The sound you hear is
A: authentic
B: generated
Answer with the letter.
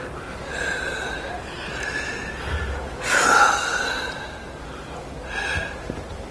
A